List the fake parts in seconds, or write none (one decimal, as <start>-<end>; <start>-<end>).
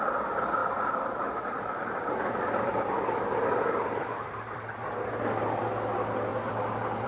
0.6-4.9; 6.3-7.1